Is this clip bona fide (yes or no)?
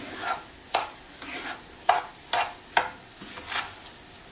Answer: yes